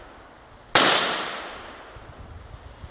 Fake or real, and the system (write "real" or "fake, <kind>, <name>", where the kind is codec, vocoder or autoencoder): real